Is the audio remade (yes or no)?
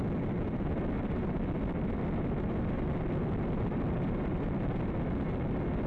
no